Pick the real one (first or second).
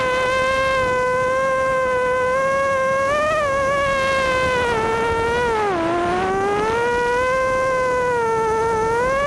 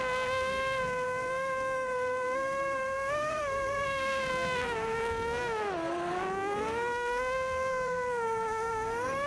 first